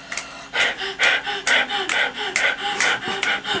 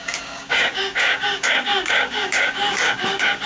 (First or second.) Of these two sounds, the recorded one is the first